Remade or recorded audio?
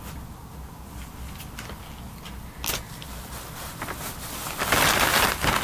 recorded